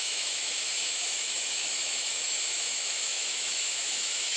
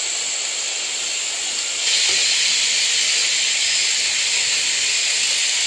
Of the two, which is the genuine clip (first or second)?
second